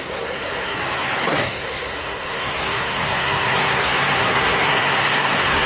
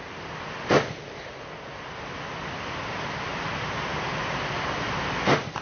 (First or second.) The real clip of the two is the second